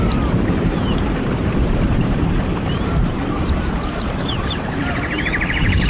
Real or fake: fake